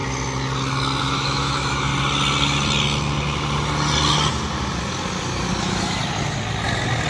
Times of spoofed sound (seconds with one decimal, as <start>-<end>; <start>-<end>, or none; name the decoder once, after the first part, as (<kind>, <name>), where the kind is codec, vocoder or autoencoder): 1.0-1.9 (autoencoder, DAC-VAE); 5.6-6.0